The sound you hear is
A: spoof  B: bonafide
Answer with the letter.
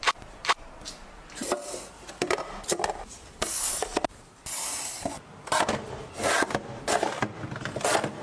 B